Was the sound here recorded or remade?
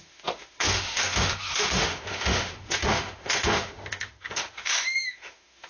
remade